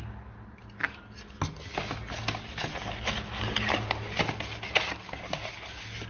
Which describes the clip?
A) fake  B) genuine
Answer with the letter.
B